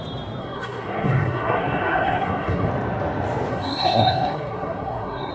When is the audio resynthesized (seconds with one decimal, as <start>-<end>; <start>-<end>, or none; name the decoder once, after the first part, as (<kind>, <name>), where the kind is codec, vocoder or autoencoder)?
0.4-2.7 (codec, SNAC); 3.5-5.3

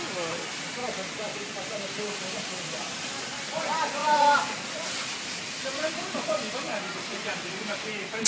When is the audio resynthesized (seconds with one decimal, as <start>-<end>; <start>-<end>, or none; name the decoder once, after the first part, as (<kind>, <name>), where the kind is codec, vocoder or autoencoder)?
4.0-7.3 (vocoder, BigVGAN v2)

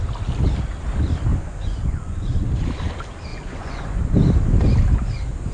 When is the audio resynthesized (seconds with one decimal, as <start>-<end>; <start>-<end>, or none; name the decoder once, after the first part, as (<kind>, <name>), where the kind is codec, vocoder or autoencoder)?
1.3-2.3 (vocoder, Vocos); 3.3-4.0

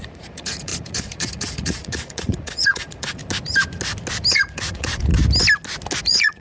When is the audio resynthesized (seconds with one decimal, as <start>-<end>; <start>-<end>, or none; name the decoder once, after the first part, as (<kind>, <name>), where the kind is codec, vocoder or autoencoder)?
0.0-3.2 (vocoder, Vocos); 4.3-5.1; 6.0-6.4

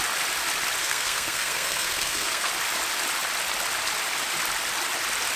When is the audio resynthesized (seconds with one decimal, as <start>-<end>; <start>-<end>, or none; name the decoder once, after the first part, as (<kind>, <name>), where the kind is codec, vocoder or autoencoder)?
0.8-2.5 (codec, SNAC)

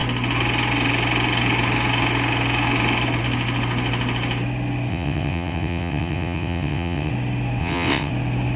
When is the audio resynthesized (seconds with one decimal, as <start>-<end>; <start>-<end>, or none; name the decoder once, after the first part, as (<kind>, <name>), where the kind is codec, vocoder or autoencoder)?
4.9-7.1 (vocoder, WaveNeXt); 7.6-8.1

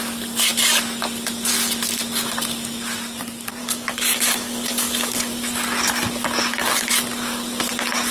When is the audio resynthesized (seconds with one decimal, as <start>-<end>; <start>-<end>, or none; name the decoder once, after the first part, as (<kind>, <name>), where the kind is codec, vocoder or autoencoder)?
3.6-5.3 (codec, DAC)

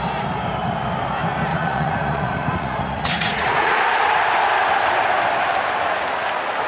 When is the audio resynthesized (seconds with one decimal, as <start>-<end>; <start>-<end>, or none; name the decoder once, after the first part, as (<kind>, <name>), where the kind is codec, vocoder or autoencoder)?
1.5-3.8 (vocoder, Vocos)